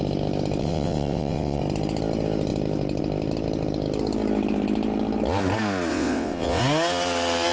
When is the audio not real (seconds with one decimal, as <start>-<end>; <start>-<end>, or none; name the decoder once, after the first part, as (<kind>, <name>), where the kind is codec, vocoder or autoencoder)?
0.6-1.6 (vocoder, WaveNeXt); 5.9-6.6